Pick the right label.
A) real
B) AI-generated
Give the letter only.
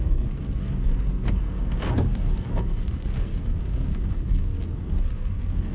B